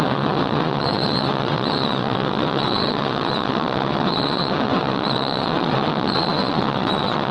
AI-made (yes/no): yes